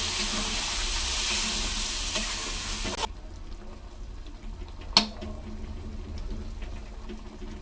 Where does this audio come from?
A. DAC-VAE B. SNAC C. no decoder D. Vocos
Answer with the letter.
C